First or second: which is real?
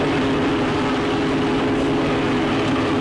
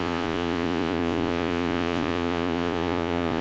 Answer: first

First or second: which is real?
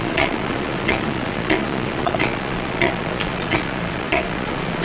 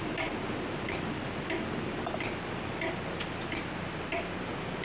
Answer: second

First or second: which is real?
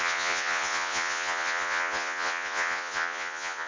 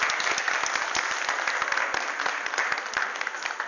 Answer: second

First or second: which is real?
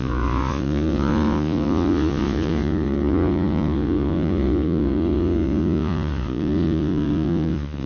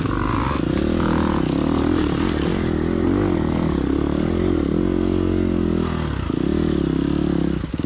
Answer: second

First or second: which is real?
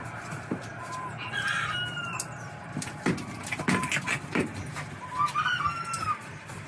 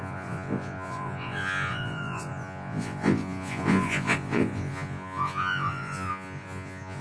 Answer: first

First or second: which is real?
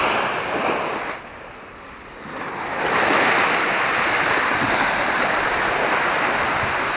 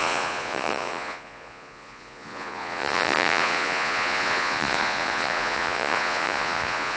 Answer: first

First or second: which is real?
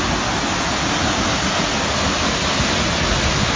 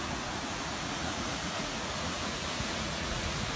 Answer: first